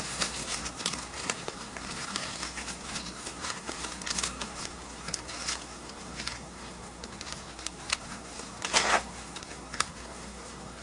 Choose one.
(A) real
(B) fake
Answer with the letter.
B